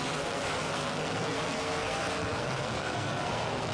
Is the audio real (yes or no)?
no